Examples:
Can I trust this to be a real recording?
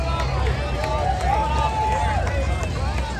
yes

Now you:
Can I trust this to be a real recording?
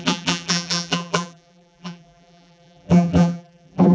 no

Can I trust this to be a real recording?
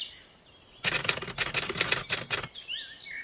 yes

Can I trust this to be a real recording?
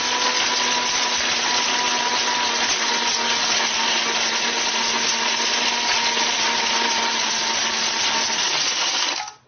yes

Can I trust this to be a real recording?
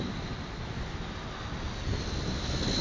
yes